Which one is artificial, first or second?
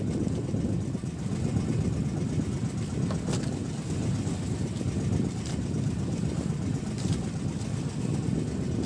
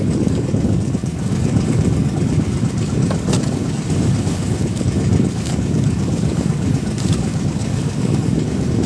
second